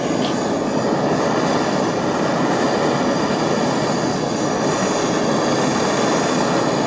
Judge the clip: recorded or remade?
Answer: recorded